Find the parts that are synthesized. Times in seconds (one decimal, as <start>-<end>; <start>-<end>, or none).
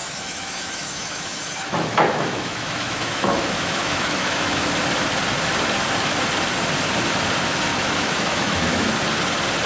0.0-4.7; 7.7-8.9